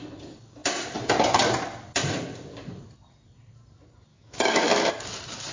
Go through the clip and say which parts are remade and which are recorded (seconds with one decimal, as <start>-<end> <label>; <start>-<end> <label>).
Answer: 0.0-4.1 recorded; 4.1-4.9 remade; 4.9-5.5 recorded